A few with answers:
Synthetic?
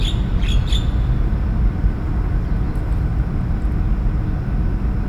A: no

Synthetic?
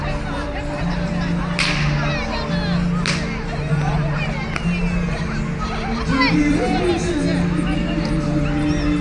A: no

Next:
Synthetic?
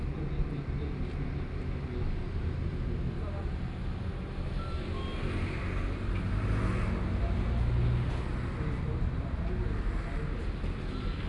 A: no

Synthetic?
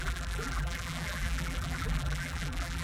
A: yes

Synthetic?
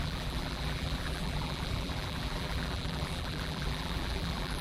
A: yes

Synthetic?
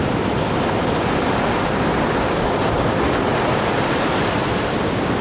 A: yes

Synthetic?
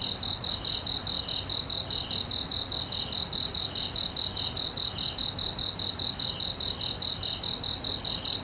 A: no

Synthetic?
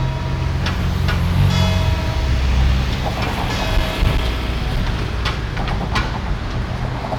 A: no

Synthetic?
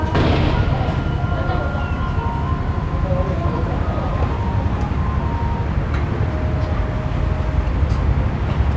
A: no